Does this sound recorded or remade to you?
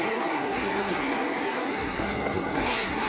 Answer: remade